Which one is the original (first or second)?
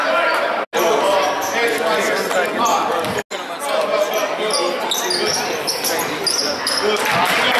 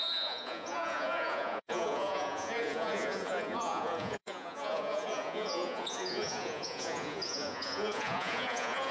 first